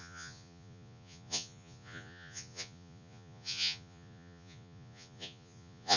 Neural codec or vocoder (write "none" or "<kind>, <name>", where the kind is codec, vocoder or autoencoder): vocoder, Vocos